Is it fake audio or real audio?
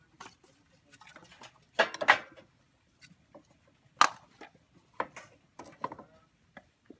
real